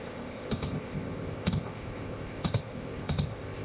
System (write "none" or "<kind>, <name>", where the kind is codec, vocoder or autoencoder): codec, ZipCodec